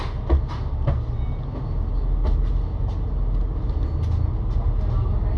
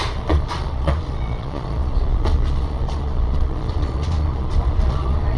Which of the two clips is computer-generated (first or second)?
second